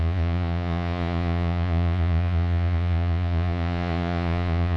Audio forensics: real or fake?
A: fake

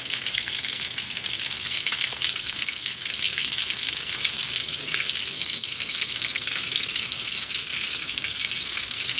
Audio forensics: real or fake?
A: fake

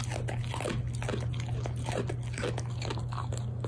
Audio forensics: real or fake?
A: real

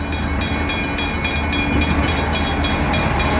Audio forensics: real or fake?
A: real